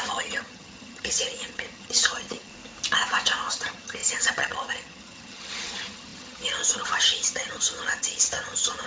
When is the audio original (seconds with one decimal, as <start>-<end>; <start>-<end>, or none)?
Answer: 2.5-3.5

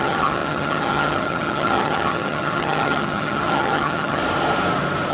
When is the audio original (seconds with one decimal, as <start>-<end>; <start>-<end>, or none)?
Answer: 4.2-5.1

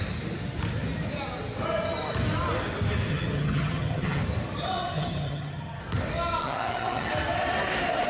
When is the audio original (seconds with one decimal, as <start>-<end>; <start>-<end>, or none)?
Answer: 0.0-3.1; 4.2-4.9; 5.8-6.4; 7.1-8.1

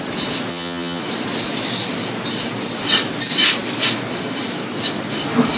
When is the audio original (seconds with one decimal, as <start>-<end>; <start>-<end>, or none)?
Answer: 0.0-0.5; 1.0-5.6

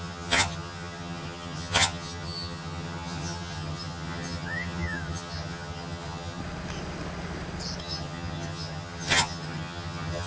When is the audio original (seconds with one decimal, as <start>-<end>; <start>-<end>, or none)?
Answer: 6.4-7.8

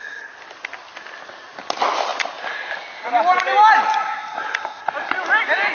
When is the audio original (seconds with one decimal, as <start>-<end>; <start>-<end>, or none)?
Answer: 0.0-5.7

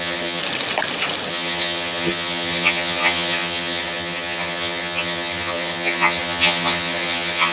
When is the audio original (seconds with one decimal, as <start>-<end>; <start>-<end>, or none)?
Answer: 0.4-1.3

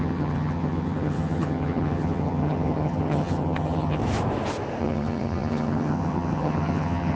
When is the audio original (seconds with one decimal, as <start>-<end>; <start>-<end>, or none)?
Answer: 4.0-4.8